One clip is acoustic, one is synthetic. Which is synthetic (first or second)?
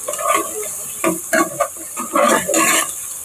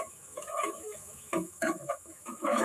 second